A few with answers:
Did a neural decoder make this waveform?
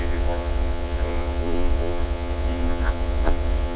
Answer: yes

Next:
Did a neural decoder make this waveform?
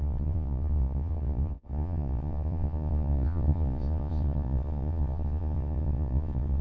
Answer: yes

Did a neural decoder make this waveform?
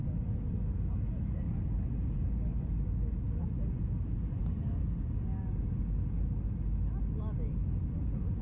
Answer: no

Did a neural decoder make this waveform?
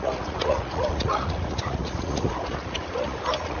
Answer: yes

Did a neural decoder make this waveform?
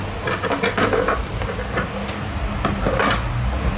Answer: no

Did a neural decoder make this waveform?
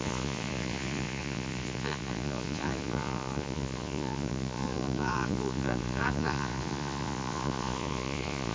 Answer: yes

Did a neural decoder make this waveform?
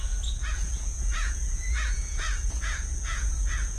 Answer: yes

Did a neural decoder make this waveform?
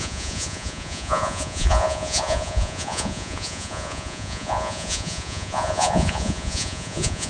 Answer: yes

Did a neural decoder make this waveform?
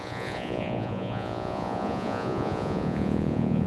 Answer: yes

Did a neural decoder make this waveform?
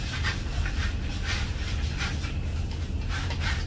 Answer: no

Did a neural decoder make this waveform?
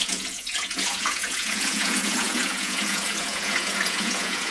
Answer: yes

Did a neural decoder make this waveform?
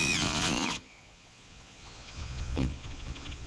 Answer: yes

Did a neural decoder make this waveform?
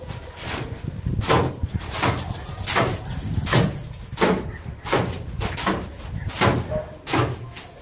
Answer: no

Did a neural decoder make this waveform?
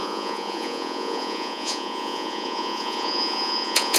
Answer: yes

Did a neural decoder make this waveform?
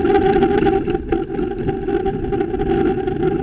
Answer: no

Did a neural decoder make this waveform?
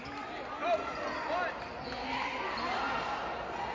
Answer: no